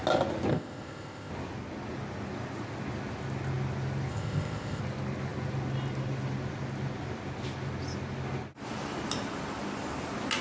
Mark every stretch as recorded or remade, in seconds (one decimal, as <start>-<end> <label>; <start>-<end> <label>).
0.0-0.5 recorded; 0.5-1.3 remade; 1.3-4.1 recorded; 4.1-4.8 remade; 4.8-10.4 recorded